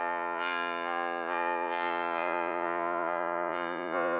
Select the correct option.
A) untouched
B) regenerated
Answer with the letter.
B